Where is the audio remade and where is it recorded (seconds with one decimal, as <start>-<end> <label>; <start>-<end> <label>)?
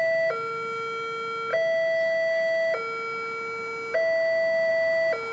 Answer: 0.0-5.3 recorded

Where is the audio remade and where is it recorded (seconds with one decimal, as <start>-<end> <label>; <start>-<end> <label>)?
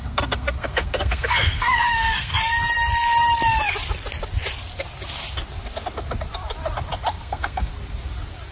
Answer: 0.0-2.3 remade; 2.3-7.1 recorded; 7.1-7.7 remade; 7.7-8.5 recorded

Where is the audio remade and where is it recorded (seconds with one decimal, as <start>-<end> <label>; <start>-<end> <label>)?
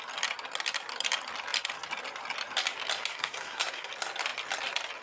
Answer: 0.0-3.1 recorded; 3.1-3.9 remade; 3.9-5.0 recorded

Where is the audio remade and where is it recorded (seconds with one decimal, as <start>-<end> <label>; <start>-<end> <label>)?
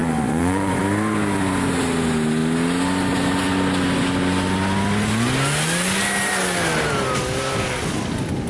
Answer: 0.0-0.8 remade; 0.8-8.5 recorded